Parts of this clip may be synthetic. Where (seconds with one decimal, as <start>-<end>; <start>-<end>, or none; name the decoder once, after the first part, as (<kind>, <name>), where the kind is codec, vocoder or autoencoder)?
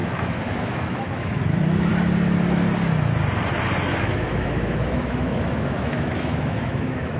0.0-1.9 (autoencoder, DAC-VAE); 4.0-7.2